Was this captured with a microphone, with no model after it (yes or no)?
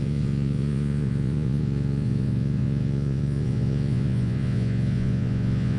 no